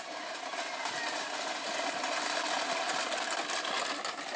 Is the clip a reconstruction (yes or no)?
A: no